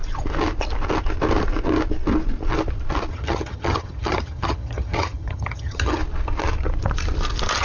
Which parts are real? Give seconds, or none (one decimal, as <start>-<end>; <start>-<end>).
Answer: 0.0-3.1; 6.0-7.6